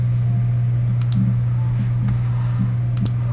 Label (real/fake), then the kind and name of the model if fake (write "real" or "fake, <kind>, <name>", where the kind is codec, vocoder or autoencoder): real